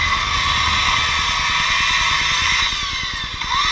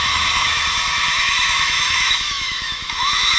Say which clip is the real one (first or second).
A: first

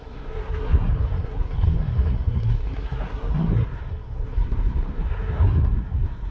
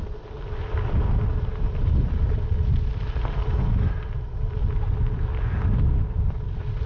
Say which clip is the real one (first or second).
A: second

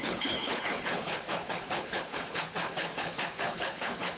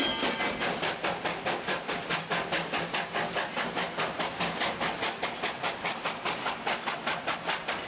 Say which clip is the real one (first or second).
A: second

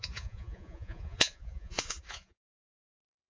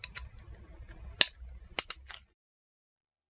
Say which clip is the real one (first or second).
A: second